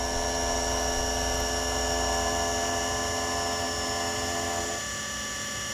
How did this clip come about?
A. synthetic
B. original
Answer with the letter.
B